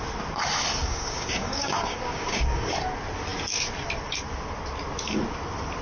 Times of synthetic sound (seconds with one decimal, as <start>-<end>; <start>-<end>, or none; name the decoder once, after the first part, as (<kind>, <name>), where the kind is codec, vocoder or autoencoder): 0.8-2.7 (codec, DAC)